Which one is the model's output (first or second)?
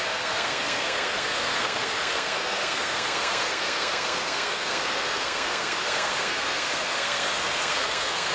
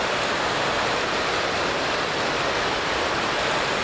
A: first